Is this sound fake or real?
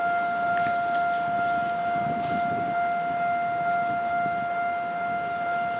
real